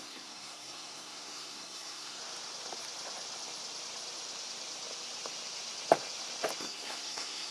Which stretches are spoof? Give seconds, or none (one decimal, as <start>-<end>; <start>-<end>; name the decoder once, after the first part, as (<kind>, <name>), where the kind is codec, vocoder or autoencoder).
0.0-2.2 (codec, SNAC); 6.6-7.5